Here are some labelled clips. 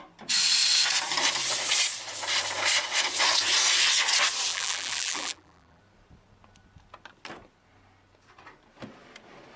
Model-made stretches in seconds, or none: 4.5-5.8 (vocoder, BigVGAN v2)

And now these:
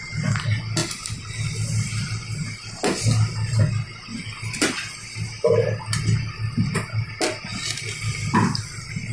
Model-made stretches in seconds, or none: none